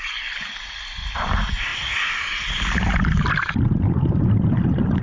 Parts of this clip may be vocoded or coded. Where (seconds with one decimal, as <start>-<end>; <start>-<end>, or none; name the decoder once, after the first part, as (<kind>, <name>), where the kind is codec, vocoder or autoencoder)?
none